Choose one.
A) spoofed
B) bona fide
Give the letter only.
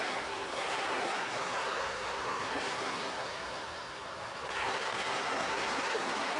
A